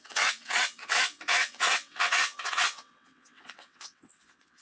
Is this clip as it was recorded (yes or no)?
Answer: no